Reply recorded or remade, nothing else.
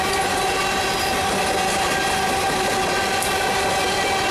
recorded